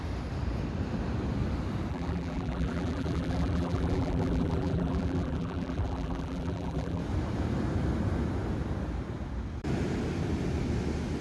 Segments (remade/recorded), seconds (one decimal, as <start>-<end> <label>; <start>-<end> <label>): 0.0-1.9 recorded; 1.9-7.0 remade; 7.0-11.2 recorded